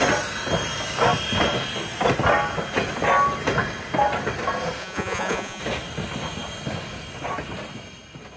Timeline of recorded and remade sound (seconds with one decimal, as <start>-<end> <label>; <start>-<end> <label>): 0.0-4.8 recorded; 4.8-5.6 remade; 5.6-8.4 recorded